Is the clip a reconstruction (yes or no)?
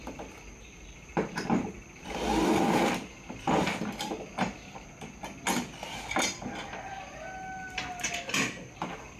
no